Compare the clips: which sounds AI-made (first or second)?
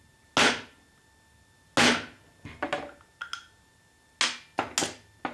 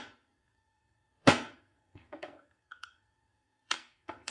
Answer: second